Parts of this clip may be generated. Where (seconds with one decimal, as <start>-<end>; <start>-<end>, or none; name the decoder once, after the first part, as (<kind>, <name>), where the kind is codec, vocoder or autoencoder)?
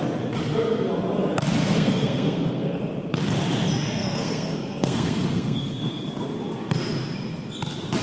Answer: 1.6-2.8 (codec, SNAC); 4.0-6.1